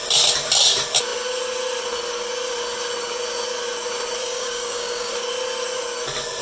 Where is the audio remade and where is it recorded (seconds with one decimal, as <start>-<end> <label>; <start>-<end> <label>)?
0.0-4.2 recorded; 4.2-5.1 remade; 5.1-6.4 recorded